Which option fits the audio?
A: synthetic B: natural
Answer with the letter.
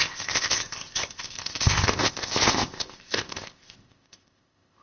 A